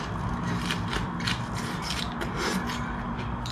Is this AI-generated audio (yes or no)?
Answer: no